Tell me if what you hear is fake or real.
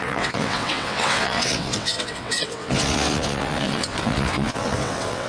fake